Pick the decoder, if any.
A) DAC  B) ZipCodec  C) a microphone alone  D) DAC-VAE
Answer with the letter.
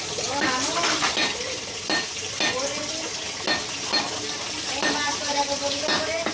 C